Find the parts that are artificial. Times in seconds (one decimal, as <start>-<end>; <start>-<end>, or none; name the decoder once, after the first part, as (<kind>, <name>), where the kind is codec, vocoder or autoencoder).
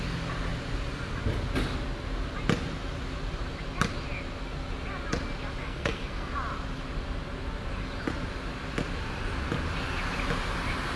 5.6-6.3 (codec, SNAC)